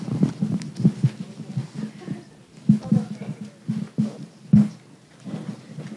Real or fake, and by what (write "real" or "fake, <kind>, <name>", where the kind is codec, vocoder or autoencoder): real